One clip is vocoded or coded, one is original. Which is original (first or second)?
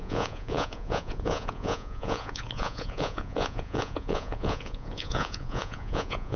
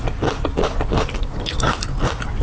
second